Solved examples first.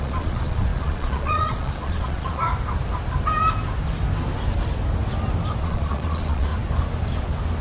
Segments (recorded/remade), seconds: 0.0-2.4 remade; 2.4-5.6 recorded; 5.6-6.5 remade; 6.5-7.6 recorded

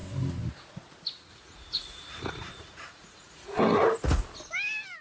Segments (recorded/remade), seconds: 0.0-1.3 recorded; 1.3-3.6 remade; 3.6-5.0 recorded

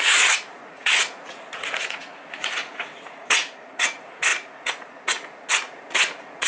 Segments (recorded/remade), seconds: 0.0-6.5 remade

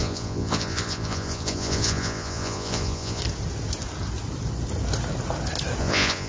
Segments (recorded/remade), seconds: 0.0-3.2 remade; 3.2-5.8 recorded; 5.8-6.3 remade